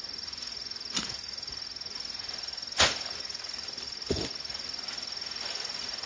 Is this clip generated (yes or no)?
no